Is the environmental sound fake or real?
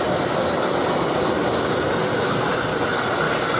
real